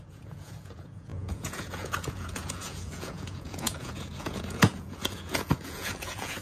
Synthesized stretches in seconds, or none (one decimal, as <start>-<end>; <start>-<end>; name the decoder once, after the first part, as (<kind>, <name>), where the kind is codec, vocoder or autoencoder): 0.0-6.4 (vocoder, Vocos)